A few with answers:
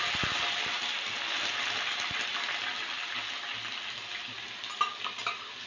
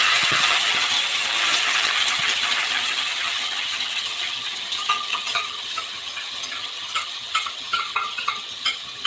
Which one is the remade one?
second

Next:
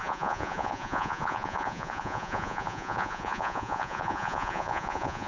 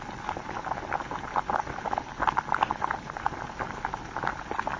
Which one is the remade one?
first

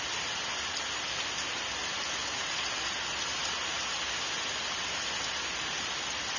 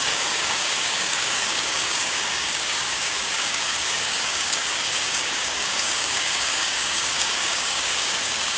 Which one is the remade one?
second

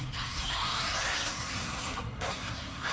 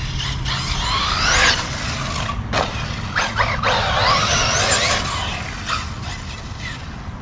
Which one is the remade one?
first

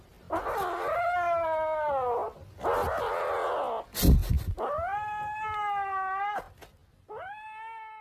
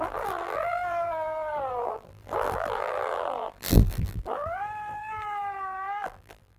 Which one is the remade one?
second